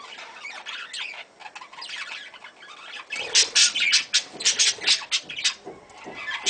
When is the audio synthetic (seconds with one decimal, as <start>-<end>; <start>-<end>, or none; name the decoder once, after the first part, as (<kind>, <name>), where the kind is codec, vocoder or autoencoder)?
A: none